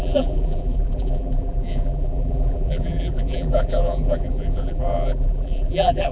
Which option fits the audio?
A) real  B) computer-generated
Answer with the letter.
B